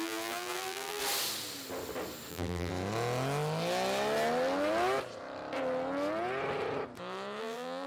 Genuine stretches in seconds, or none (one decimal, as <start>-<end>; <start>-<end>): 1.0-2.3; 2.7-7.4